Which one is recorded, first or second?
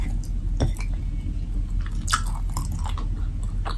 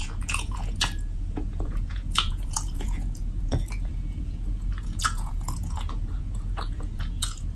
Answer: first